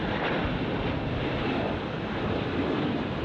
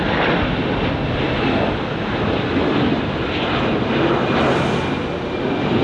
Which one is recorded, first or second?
second